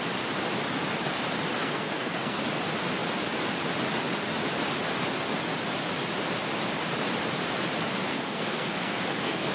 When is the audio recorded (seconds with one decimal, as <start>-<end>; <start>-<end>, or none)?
0.0-1.6; 2.4-8.1